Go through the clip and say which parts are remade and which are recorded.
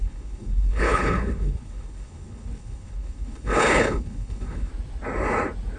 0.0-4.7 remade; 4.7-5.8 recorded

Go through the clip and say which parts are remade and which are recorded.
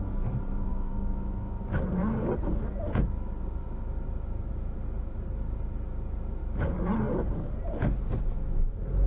0.0-0.7 recorded; 0.7-1.6 remade; 1.6-9.1 recorded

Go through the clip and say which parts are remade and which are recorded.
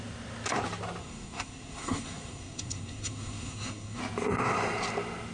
0.0-1.0 recorded; 1.0-4.0 remade; 4.0-5.3 recorded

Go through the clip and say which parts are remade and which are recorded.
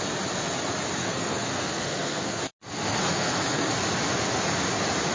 0.0-1.0 recorded; 1.0-2.4 remade; 2.4-2.9 recorded; 2.9-3.7 remade; 3.7-5.1 recorded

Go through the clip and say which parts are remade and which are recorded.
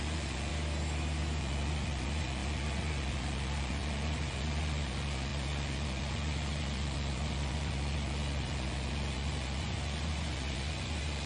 0.0-0.5 remade; 0.5-1.4 recorded; 1.4-11.3 remade